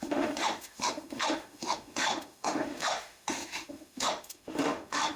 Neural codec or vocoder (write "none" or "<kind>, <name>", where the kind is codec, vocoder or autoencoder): autoencoder, DAC-VAE